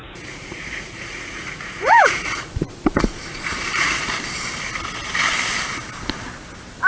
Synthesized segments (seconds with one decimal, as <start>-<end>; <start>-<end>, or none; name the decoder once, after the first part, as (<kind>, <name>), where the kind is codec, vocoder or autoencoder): 0.0-4.1 (vocoder, Vocos)